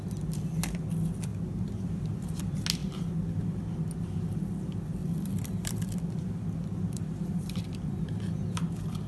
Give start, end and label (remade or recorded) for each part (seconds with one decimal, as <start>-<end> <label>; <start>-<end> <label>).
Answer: 0.0-1.3 recorded; 1.3-2.4 remade; 2.4-2.8 recorded; 2.8-3.4 remade; 3.4-5.0 recorded; 5.0-8.0 remade; 8.0-9.1 recorded